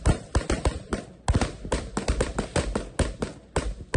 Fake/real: real